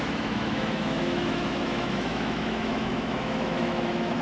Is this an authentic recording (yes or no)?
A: no